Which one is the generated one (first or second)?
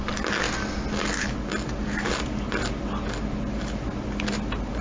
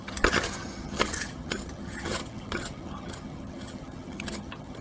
second